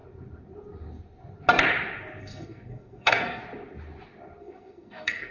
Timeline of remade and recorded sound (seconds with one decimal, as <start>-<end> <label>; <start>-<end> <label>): 0.0-2.2 recorded; 2.2-3.4 remade; 3.4-4.4 recorded; 4.4-5.3 remade